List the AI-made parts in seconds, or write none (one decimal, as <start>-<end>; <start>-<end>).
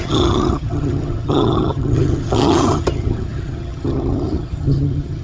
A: 0.0-5.2